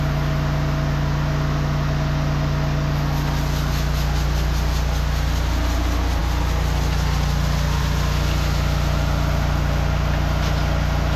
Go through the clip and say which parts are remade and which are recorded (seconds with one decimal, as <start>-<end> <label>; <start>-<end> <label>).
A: 0.0-11.2 recorded